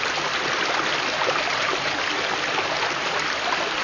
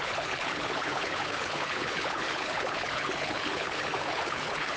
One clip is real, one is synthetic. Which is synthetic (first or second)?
second